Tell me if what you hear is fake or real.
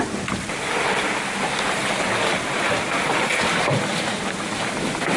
real